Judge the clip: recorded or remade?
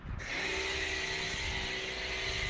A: recorded